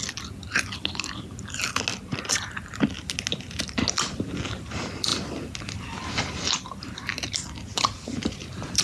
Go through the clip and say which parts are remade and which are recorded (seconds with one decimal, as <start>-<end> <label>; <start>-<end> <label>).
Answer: 0.0-7.7 recorded; 7.7-8.8 remade